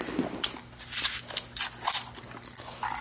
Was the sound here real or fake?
real